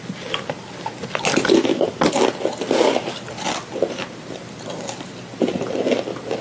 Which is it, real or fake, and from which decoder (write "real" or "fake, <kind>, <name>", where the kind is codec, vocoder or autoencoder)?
real